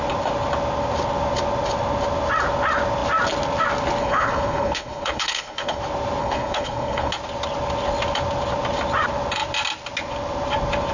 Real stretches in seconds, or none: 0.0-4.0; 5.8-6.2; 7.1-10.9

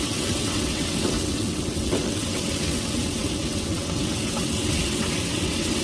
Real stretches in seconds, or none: none